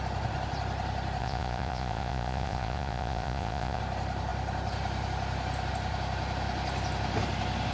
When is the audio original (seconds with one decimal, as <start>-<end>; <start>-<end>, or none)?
0.0-1.2; 3.8-7.7